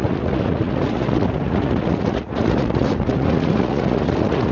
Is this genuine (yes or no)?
no